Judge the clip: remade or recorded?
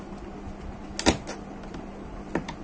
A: recorded